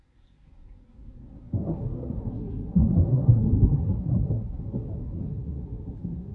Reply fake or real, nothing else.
fake